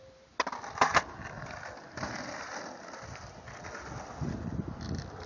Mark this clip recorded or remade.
recorded